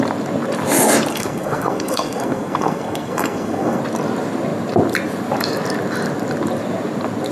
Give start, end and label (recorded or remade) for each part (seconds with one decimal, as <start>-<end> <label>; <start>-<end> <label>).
0.0-1.1 recorded; 1.1-3.8 remade; 3.8-7.3 recorded